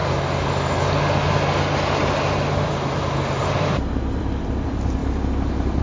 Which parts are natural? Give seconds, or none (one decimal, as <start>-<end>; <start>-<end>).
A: 0.0-3.5; 5.0-5.8